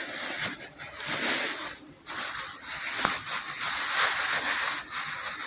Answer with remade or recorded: recorded